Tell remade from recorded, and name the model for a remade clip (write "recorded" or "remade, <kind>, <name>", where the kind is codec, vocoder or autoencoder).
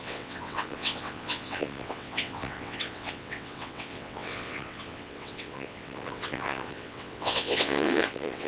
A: remade, vocoder, WaveNeXt